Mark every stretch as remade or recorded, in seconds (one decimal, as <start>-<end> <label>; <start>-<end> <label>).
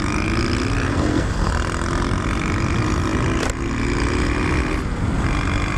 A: 0.0-0.9 recorded; 0.9-1.5 remade; 1.5-5.8 recorded